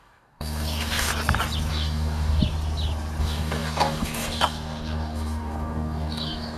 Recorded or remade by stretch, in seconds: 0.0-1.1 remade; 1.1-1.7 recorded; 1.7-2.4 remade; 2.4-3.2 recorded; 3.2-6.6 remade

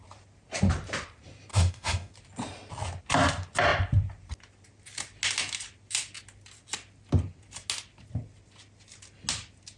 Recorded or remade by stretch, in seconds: 0.0-1.5 recorded; 1.5-2.1 remade; 2.1-9.8 recorded